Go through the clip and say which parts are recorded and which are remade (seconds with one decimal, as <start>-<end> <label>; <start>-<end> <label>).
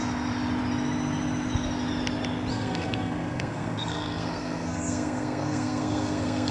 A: 0.0-2.5 recorded; 2.5-6.5 remade